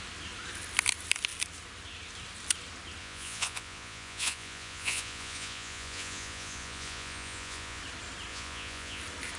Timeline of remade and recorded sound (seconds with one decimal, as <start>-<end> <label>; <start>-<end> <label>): 0.0-3.0 recorded; 3.0-7.8 remade; 7.8-8.3 recorded; 8.3-9.0 remade; 9.0-9.4 recorded